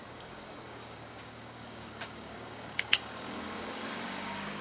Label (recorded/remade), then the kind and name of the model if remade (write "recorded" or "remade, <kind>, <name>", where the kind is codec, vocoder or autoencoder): remade, codec, DAC